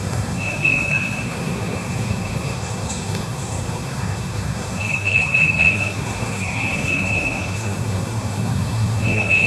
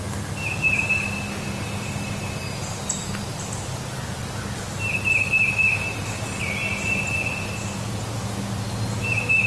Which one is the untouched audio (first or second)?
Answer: second